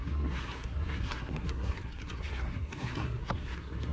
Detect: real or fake fake